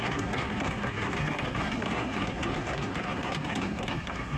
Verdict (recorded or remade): remade